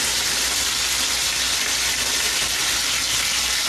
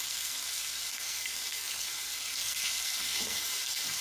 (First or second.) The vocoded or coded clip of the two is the second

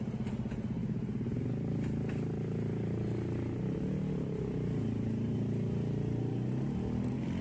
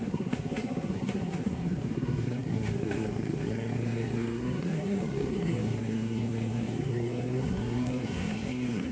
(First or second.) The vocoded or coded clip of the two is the second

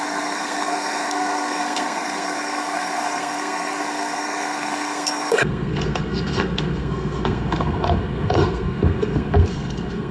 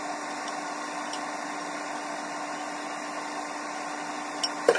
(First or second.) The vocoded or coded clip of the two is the first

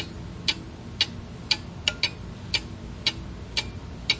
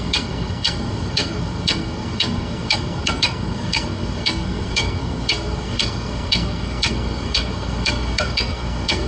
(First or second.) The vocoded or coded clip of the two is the second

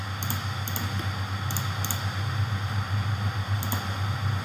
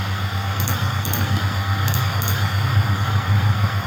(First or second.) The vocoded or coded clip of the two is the second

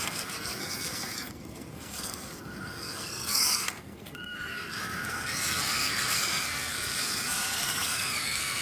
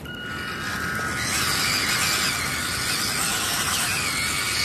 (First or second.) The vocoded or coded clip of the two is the first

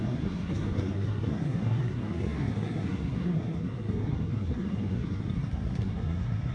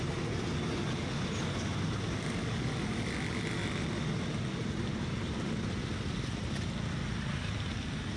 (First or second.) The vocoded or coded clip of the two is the first